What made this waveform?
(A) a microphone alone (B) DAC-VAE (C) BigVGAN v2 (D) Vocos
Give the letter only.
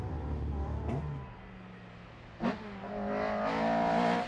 A